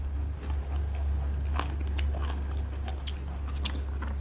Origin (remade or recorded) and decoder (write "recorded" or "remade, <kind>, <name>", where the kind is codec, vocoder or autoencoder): recorded